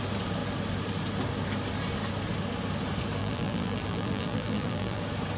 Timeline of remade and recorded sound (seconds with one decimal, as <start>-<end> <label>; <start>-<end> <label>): 0.0-3.2 recorded; 3.2-5.0 remade; 5.0-5.4 recorded